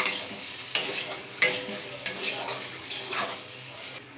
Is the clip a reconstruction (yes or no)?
yes